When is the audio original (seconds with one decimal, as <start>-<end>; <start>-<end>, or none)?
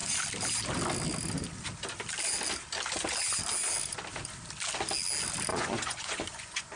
0.0-5.5